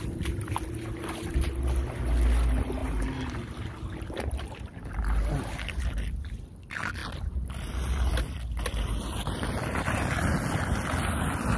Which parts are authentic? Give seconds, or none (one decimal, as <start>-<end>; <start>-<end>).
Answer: 0.0-11.6